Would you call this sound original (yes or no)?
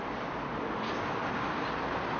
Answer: no